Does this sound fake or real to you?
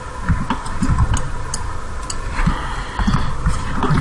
real